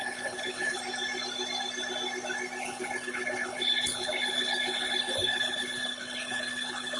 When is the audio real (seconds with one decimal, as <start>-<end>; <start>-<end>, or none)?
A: 0.8-2.6